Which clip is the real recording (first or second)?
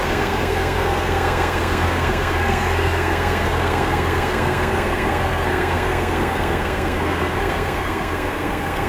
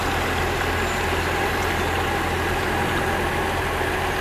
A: second